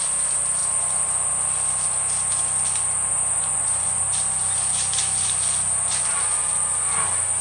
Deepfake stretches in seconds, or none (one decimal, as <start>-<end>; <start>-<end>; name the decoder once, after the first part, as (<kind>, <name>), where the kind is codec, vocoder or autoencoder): 3.1-4.1 (vocoder, Vocos)